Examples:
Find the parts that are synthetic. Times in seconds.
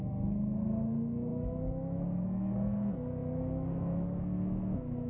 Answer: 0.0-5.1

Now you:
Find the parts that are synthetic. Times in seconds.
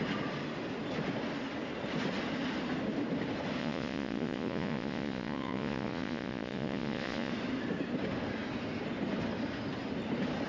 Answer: 3.6-7.3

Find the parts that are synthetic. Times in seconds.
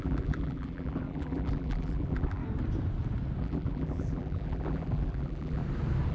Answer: 0.0-2.4; 3.4-5.6